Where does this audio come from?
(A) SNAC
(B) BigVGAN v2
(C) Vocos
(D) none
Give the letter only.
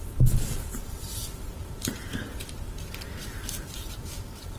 B